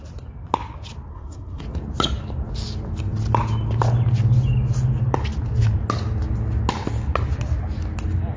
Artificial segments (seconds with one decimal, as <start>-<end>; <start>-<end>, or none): 1.1-1.6